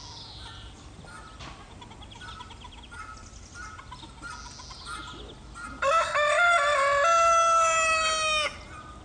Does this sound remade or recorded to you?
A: recorded